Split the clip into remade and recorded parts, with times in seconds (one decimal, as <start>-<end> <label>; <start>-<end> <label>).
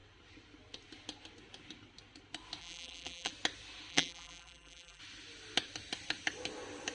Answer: 0.0-2.6 recorded; 2.6-3.3 remade; 3.3-3.9 recorded; 3.9-5.0 remade; 5.0-6.9 recorded